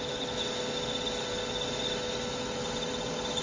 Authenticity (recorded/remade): recorded